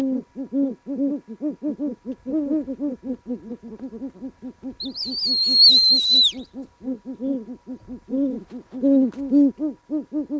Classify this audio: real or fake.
real